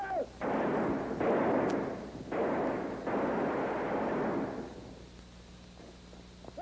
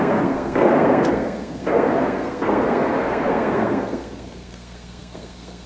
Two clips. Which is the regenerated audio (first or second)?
second